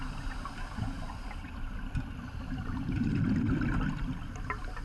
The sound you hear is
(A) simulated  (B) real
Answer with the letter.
B